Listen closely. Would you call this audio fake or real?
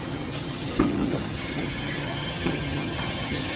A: fake